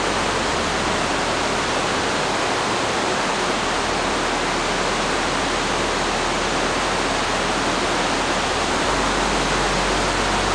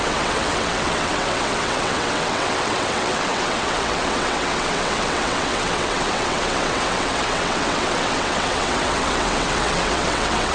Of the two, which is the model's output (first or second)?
second